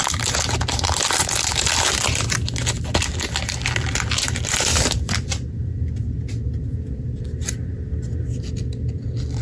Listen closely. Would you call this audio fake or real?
real